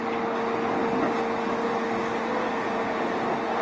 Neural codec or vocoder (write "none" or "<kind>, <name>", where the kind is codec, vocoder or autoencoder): none